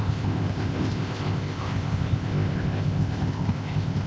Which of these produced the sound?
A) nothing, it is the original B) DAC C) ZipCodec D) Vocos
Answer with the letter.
C